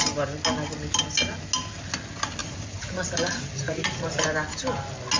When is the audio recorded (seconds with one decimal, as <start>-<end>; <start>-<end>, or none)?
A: 0.0-2.4; 4.2-5.2